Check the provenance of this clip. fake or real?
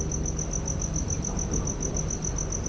real